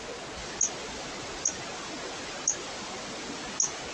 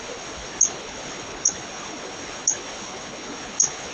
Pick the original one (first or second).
first